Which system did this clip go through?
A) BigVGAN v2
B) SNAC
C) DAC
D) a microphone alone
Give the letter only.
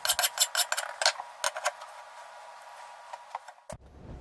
D